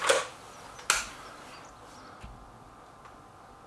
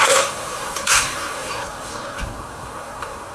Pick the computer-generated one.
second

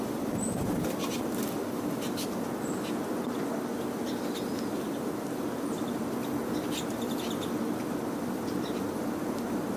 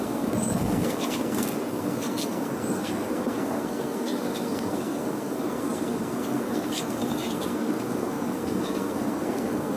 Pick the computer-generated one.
second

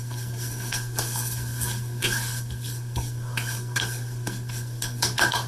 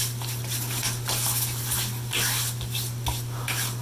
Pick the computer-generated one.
first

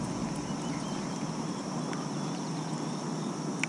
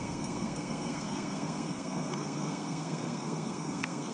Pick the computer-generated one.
second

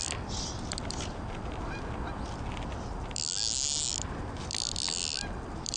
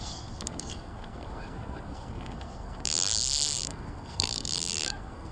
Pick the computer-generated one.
second